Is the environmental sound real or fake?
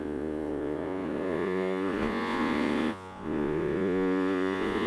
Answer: fake